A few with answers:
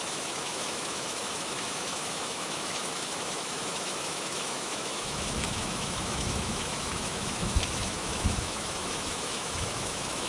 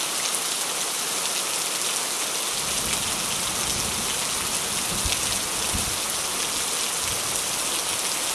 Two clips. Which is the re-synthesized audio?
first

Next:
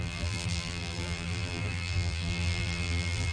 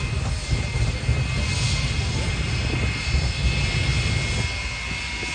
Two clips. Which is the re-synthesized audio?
first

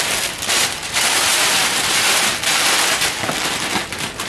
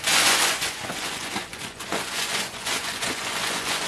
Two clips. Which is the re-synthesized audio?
second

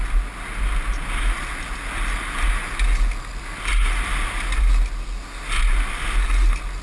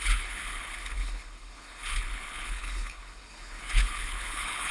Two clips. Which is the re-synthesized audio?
second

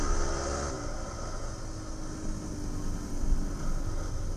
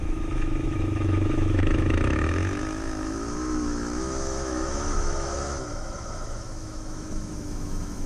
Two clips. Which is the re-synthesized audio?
second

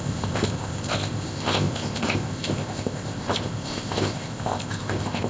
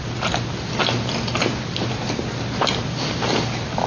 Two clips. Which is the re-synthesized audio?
first